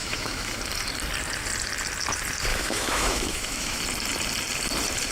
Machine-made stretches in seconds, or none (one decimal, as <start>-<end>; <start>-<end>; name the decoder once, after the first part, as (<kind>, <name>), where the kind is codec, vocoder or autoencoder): 0.0-0.6 (autoencoder, DAC-VAE); 2.5-3.8